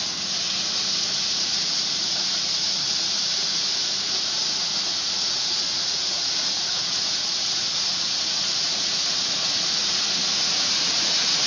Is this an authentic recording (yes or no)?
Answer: no